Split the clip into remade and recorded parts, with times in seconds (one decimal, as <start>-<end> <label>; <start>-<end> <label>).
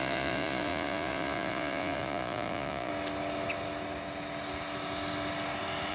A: 0.0-2.9 remade; 2.9-5.9 recorded